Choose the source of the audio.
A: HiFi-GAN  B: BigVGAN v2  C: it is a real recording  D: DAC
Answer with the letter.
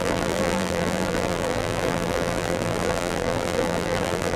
B